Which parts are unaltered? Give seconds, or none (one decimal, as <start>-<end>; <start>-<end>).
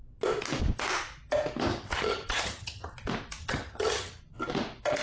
0.0-1.7; 2.9-3.4; 4.2-5.0